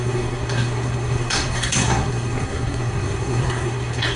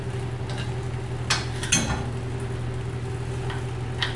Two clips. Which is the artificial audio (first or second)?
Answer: first